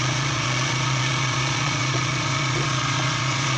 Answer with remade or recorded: remade